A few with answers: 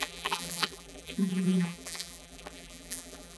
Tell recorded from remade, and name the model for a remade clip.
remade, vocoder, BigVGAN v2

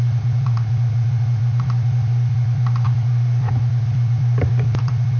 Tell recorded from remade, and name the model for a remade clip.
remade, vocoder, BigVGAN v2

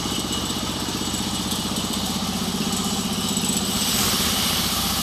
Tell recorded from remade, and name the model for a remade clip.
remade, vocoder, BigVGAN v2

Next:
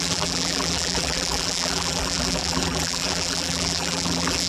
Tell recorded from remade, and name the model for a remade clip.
remade, vocoder, BigVGAN v2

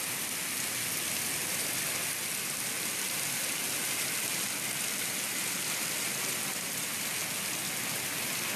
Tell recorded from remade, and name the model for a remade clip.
recorded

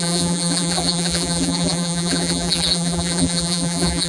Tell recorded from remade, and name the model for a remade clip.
remade, vocoder, BigVGAN v2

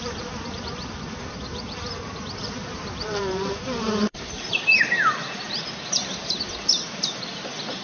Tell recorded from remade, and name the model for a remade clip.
remade, vocoder, BigVGAN v2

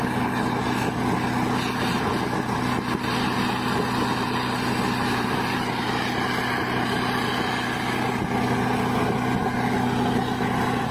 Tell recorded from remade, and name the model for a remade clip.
recorded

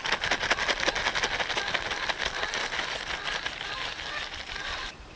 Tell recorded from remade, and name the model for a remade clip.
recorded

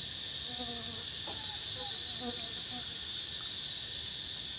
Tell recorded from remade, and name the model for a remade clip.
recorded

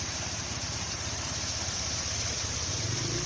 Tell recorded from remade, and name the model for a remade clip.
remade, vocoder, BigVGAN v2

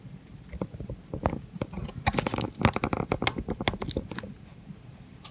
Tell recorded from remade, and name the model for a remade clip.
recorded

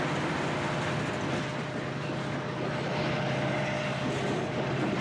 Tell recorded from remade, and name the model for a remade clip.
recorded